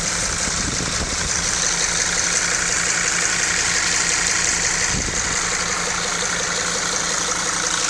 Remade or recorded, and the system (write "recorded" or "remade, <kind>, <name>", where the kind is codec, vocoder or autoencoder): recorded